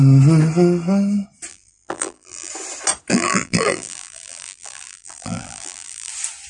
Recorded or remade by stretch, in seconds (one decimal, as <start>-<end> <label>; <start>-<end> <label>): 0.0-1.5 recorded; 1.5-2.5 remade; 2.5-3.1 recorded; 3.1-6.1 remade; 6.1-6.5 recorded